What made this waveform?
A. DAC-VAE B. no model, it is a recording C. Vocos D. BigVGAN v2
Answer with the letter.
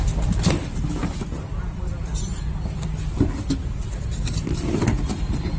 D